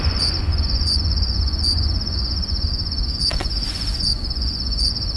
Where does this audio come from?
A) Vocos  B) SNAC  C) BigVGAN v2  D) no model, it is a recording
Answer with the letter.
A